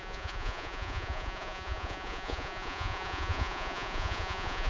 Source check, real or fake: fake